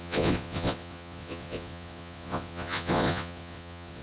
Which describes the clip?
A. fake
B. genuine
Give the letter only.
A